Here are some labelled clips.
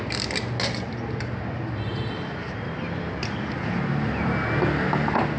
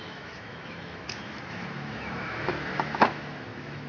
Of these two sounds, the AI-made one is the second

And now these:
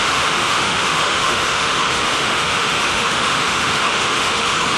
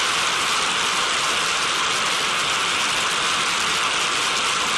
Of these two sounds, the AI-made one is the first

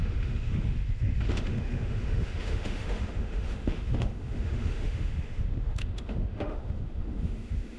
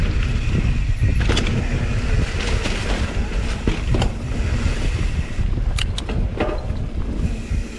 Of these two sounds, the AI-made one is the first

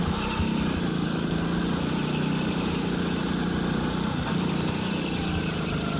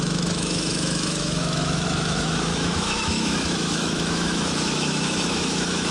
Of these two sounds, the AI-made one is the second